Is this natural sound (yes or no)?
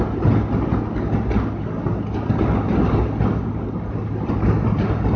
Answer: yes